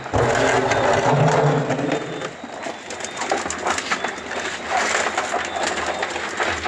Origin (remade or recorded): recorded